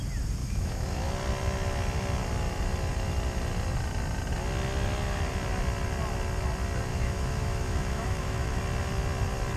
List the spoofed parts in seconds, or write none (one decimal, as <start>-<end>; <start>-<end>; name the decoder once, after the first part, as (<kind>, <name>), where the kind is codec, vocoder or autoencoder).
0.4-1.1 (autoencoder, DAC-VAE); 6.9-8.6